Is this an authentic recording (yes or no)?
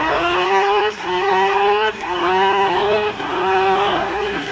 no